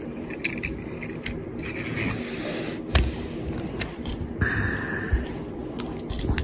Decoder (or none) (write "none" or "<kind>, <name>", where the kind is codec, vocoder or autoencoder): none